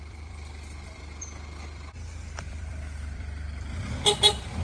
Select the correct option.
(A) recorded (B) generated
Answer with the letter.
B